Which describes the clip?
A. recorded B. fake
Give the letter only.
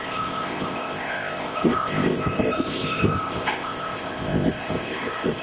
B